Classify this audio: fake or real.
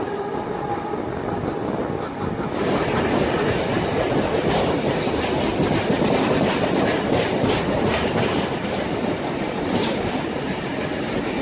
real